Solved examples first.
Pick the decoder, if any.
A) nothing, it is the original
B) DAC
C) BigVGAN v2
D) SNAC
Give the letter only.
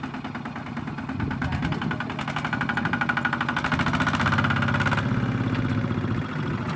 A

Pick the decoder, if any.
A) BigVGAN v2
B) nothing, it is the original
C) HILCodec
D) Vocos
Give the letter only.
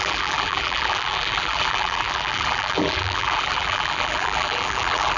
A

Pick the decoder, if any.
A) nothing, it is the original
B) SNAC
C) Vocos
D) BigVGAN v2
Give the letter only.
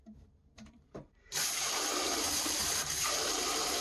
D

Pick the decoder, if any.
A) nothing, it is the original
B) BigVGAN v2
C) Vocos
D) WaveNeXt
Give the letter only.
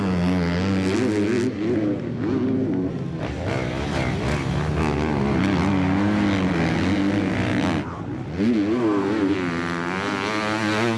A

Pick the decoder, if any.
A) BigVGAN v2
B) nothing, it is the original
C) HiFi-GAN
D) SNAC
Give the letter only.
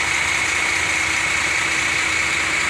A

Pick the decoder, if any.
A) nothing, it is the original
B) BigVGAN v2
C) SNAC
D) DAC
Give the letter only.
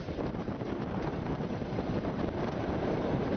B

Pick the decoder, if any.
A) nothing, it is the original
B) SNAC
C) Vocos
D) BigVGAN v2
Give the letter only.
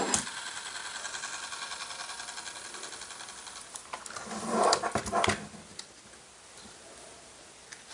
A